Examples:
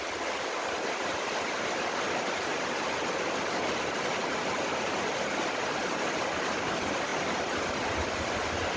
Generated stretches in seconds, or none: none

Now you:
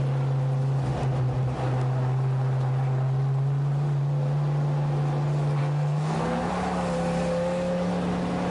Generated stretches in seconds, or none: 5.6-6.5 (codec, SNAC)

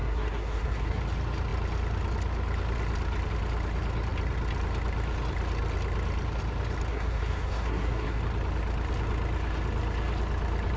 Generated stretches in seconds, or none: 0.0-1.0 (codec, SNAC); 6.9-8.2

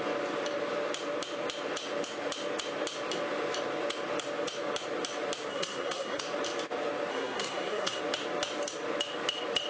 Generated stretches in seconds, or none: 5.5-6.2 (codec, SNAC); 7.1-8.0